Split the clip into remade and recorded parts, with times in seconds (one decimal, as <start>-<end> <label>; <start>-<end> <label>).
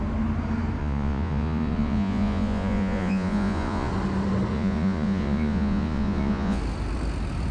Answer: 0.0-0.8 recorded; 0.8-3.9 remade; 3.9-4.5 recorded; 4.5-6.6 remade; 6.6-7.5 recorded